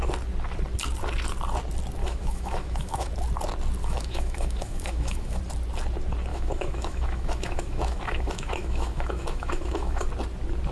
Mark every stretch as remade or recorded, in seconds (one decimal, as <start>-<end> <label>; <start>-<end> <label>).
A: 0.0-2.0 recorded; 2.0-3.1 remade; 3.1-3.8 recorded; 3.8-5.4 remade; 5.4-6.3 recorded; 6.3-10.1 remade; 10.1-10.7 recorded